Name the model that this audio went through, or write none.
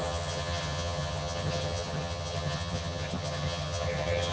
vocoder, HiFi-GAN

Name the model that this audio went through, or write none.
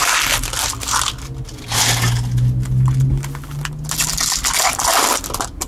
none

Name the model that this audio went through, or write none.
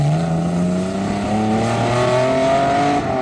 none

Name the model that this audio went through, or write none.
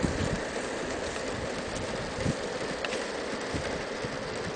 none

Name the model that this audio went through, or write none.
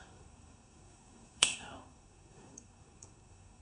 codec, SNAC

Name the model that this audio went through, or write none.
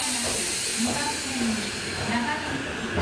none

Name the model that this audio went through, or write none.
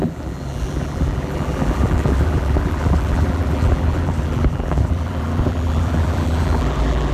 vocoder, BigVGAN v2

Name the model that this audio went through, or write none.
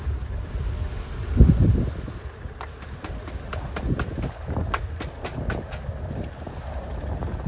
none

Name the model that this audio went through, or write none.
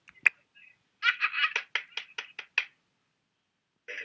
none